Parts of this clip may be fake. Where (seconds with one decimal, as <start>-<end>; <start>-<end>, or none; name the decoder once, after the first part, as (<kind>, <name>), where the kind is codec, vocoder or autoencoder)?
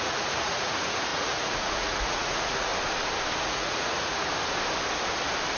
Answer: 0.0-2.7 (vocoder, Vocos); 3.4-4.3